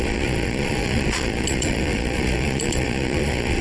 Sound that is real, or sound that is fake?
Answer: fake